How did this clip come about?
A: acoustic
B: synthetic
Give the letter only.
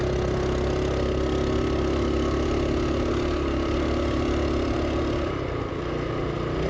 A